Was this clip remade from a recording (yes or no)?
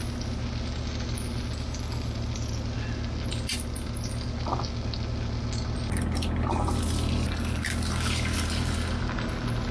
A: no